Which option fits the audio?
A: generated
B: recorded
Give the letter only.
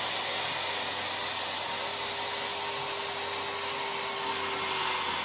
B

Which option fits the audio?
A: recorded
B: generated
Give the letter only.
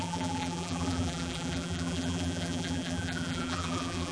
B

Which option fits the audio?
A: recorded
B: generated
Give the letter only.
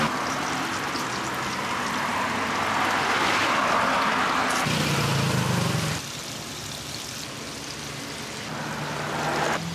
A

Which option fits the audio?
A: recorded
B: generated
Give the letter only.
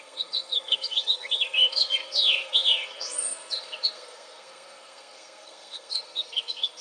B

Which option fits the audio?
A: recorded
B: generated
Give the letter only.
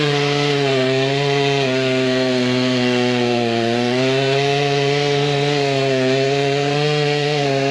B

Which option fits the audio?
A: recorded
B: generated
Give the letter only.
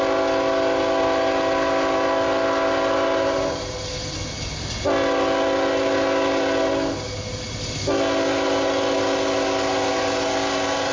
A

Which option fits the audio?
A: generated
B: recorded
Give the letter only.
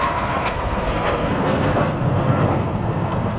A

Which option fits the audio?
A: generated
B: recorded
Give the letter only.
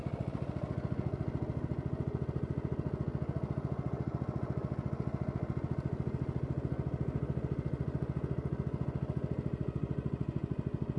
B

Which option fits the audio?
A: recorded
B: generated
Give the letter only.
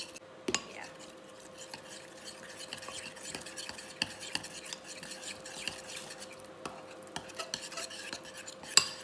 A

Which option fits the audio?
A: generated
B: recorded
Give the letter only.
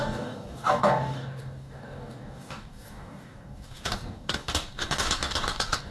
A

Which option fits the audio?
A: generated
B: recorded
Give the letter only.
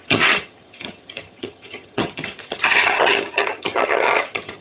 A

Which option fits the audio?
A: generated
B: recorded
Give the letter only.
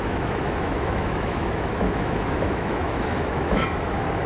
A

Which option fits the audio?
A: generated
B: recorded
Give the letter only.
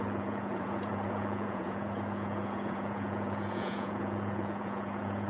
A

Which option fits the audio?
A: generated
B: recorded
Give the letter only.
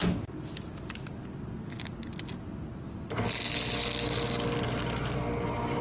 B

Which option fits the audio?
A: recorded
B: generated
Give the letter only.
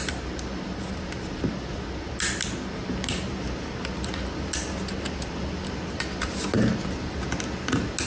A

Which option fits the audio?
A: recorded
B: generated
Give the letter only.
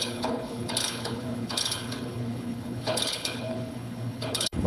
B